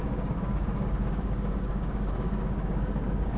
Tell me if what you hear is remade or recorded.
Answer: remade